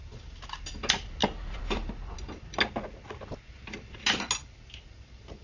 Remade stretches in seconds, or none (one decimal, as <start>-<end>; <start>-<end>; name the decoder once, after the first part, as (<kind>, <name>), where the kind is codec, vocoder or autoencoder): none